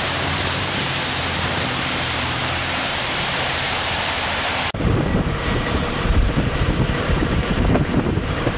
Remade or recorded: remade